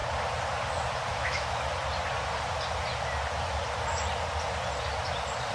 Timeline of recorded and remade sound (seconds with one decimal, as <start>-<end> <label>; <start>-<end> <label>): 0.0-1.1 recorded; 1.1-1.7 remade; 1.7-5.5 recorded